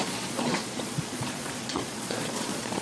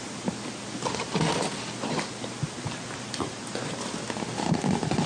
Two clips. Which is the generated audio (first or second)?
first